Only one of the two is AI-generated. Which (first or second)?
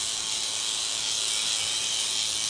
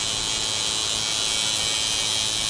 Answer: first